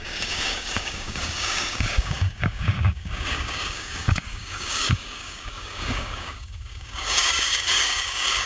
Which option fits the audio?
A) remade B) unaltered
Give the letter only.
A